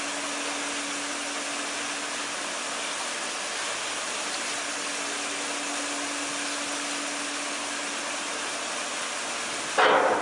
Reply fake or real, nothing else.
real